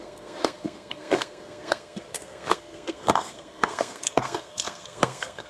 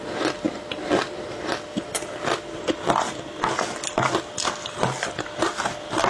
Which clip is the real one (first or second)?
second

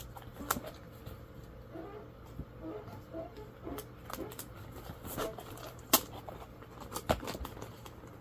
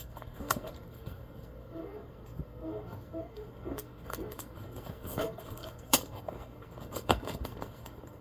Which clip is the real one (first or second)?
first